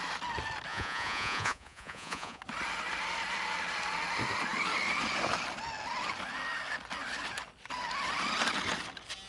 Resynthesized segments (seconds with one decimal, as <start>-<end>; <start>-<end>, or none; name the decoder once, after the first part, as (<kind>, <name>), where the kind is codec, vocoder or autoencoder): 0.7-2.4 (vocoder, Vocos)